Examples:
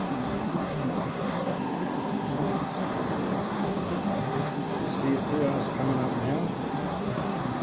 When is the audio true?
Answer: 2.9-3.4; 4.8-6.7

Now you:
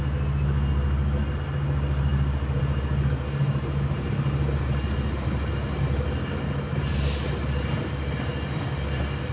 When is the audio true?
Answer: 0.0-9.3